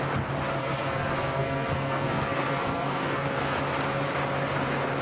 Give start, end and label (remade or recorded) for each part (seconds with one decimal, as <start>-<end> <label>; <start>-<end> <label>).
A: 0.0-0.6 recorded; 0.6-3.6 remade; 3.6-5.0 recorded